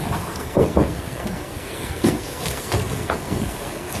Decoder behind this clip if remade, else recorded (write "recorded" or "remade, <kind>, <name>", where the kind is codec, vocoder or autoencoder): remade, codec, SNAC